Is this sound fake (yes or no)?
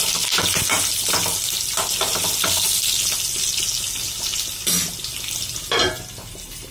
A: no